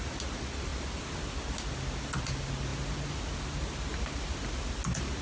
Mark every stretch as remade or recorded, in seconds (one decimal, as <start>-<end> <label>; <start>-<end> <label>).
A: 0.0-5.2 recorded